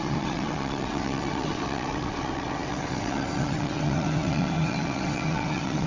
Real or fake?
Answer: fake